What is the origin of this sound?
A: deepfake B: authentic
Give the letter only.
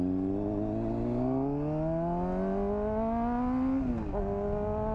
B